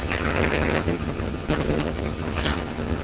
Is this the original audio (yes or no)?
no